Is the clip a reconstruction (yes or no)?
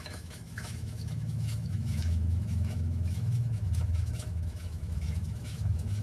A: yes